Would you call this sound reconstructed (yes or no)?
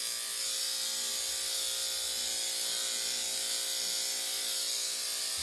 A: no